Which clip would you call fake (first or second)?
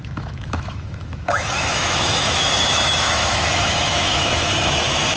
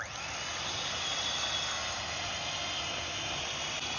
first